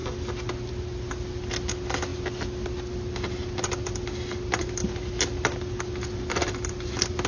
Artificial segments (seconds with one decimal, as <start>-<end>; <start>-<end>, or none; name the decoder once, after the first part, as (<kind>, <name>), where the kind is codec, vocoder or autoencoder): none